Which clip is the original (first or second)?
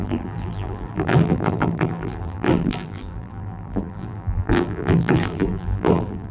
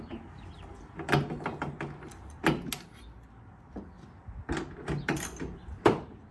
second